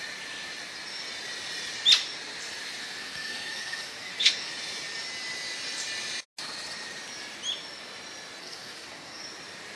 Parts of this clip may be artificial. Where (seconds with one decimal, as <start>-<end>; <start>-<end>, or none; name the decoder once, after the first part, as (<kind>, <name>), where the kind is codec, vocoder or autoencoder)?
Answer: 2.8-4.5 (codec, SNAC); 8.4-9.2